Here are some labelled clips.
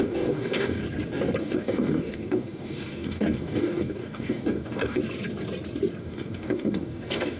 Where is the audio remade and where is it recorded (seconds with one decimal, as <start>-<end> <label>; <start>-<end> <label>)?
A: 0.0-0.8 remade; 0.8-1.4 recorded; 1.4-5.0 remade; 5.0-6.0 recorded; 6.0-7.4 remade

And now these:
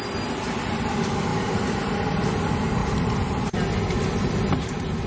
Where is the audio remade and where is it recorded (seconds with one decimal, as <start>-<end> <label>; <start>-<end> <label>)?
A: 0.0-1.3 recorded; 1.3-1.9 remade; 1.9-2.8 recorded; 2.8-3.5 remade; 3.5-5.1 recorded

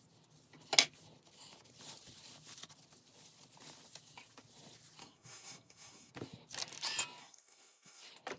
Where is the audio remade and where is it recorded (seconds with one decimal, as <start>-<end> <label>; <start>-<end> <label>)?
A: 0.0-5.0 recorded; 5.0-6.1 remade; 6.1-7.2 recorded; 7.2-8.0 remade; 8.0-8.4 recorded

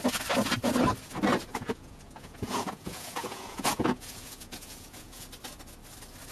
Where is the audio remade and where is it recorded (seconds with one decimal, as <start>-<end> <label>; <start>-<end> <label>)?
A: 0.0-1.5 recorded; 1.5-5.3 remade; 5.3-6.3 recorded